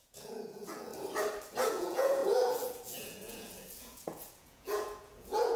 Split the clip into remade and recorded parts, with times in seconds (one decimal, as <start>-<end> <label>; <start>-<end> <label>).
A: 0.0-0.9 remade; 0.9-1.7 recorded; 1.7-5.6 remade